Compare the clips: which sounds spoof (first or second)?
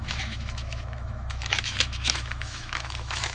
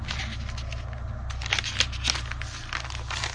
first